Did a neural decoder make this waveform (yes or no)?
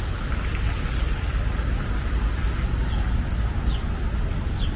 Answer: no